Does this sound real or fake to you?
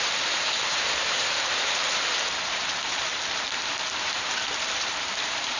fake